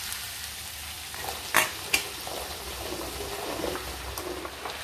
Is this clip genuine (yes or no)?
yes